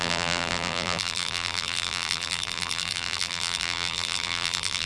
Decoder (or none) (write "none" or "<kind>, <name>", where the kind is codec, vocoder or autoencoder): vocoder, BigVGAN v2